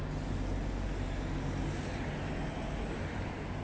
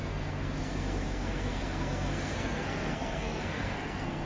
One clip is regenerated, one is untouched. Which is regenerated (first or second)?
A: second